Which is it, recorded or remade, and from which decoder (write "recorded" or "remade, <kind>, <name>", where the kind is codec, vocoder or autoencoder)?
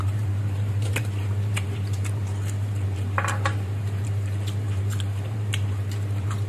remade, vocoder, BigVGAN v2